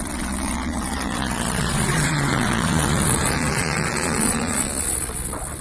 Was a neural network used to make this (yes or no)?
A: yes